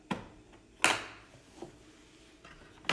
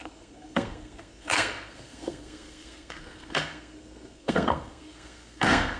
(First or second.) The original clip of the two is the first